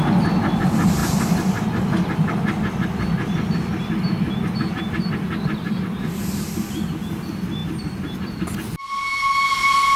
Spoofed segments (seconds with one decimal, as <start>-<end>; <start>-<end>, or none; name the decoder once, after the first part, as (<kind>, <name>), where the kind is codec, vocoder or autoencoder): none